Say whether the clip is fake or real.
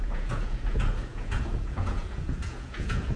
fake